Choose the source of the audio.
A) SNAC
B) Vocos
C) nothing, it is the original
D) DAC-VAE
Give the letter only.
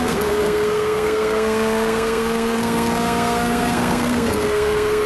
A